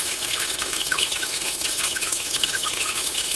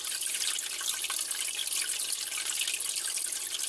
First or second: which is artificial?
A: first